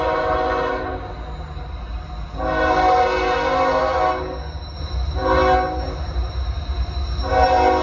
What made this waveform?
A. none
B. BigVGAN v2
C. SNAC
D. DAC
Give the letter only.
A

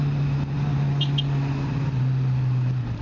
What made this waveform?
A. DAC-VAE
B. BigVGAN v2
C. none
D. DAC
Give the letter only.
C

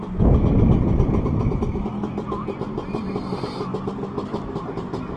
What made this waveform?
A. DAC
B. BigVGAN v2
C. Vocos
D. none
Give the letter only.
D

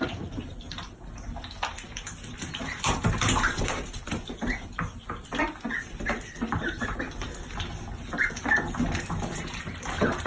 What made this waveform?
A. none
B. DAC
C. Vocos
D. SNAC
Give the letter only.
A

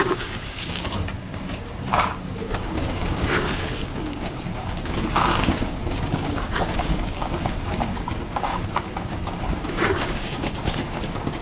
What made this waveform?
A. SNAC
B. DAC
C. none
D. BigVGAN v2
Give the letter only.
B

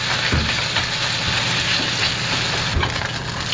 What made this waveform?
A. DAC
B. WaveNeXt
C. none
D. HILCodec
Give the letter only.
C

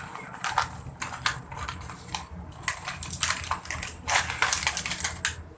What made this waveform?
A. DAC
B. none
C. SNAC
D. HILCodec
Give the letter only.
B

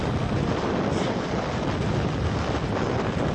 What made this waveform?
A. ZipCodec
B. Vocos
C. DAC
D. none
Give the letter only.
D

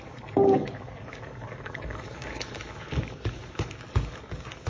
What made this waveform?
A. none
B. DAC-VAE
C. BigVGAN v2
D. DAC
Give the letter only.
D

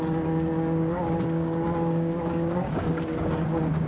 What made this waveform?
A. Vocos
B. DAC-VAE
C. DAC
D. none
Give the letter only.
C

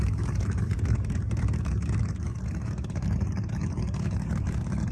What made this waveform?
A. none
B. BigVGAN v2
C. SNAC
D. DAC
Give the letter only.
D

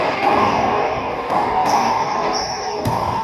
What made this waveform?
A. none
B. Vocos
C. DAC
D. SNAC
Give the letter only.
C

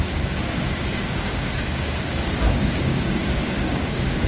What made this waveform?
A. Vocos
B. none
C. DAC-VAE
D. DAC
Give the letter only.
D